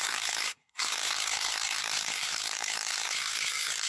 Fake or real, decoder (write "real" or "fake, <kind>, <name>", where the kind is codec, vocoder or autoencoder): fake, codec, SNAC